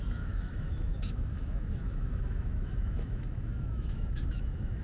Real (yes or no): no